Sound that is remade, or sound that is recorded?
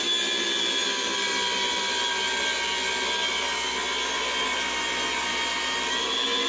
recorded